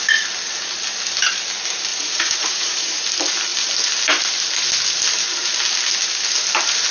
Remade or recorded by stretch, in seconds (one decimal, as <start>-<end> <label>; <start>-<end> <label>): 0.0-1.9 recorded; 1.9-3.0 remade; 3.0-6.9 recorded